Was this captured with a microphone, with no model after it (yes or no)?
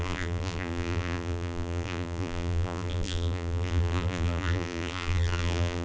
no